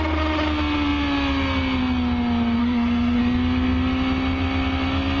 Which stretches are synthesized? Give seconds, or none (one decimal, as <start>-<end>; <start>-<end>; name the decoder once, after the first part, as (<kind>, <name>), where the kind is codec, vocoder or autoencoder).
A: 2.6-3.2 (codec, SNAC)